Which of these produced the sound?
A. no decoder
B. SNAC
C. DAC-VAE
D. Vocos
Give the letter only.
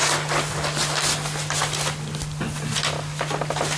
A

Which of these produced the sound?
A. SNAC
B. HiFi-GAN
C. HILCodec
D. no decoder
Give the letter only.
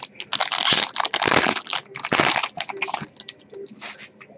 D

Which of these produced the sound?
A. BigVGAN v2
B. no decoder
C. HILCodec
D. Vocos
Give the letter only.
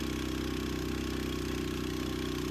B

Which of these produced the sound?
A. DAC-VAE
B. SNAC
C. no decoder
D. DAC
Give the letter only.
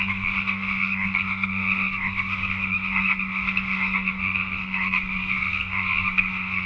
B